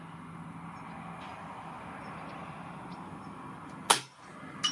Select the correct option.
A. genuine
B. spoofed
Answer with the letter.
A